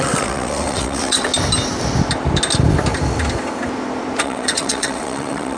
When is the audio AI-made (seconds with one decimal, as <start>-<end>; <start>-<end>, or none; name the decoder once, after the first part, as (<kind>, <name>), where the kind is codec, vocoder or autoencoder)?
0.0-1.3 (vocoder, WaveNeXt); 4.2-5.6

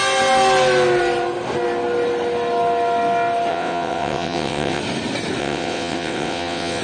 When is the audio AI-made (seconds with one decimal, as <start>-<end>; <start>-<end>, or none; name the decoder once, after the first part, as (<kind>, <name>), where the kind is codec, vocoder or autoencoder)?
3.5-4.8 (vocoder, WaveNeXt); 5.4-6.8

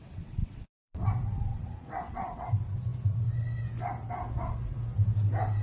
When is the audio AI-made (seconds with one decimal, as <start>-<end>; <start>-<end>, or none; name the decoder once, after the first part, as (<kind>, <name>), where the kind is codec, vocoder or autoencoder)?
0.0-0.9 (vocoder, WaveNeXt); 1.5-2.5